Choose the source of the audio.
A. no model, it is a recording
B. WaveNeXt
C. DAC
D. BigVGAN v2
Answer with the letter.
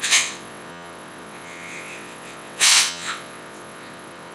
B